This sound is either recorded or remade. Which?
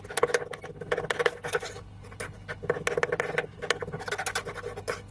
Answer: recorded